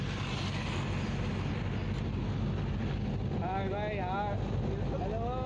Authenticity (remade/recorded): recorded